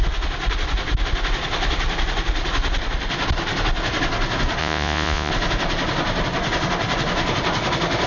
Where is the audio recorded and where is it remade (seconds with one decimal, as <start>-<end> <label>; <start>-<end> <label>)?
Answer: 0.0-4.6 recorded; 4.6-5.3 remade; 5.3-8.1 recorded